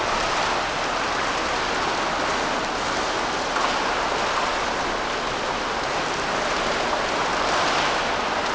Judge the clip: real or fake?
real